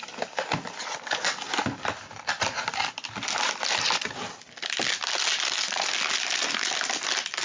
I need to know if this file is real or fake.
real